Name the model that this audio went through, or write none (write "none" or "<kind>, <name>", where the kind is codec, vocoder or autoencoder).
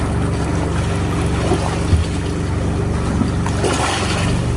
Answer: none